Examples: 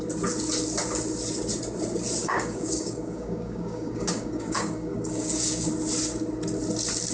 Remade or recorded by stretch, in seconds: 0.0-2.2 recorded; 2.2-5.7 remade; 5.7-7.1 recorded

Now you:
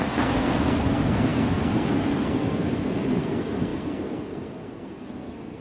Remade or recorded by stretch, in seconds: 0.0-5.6 remade

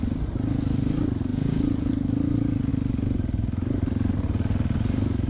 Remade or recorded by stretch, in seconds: 0.0-1.3 recorded; 1.3-1.9 remade; 1.9-5.3 recorded

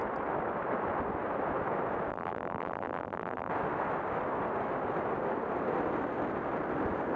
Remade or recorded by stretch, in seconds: 0.0-2.1 recorded; 2.1-3.5 remade; 3.5-7.2 recorded

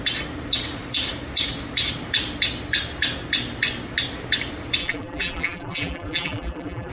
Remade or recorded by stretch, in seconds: 0.0-4.8 recorded; 4.8-6.9 remade